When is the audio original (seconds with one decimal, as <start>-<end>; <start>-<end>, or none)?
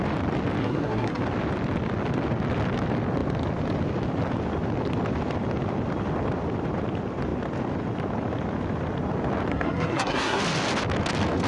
0.0-0.6; 1.2-9.5; 10.4-11.5